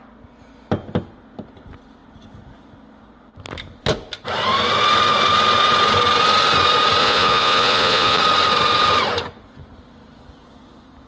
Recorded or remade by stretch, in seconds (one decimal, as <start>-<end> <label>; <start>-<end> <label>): 0.0-7.0 recorded; 7.0-8.2 remade; 8.2-11.1 recorded